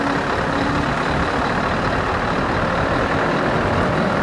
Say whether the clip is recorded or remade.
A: recorded